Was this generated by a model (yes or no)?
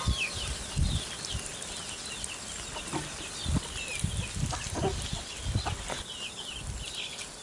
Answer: no